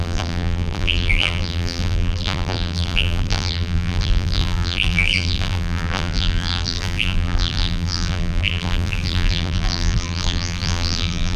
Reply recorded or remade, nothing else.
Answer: remade